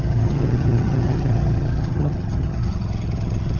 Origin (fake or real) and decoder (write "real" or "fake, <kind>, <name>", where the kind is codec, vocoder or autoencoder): fake, vocoder, HiFi-GAN